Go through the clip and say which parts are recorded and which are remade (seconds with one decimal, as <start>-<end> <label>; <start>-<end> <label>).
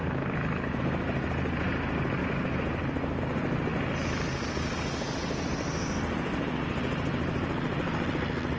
0.0-8.6 recorded